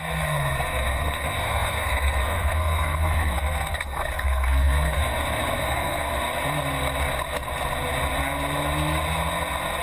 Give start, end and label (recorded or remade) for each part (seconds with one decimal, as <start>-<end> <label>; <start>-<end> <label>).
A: 0.0-5.1 remade; 5.1-5.6 recorded; 5.6-6.1 remade; 6.1-9.8 recorded